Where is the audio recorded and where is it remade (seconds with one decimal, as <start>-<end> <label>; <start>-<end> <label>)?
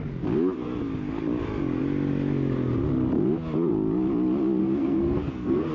0.0-4.6 recorded; 4.6-5.7 remade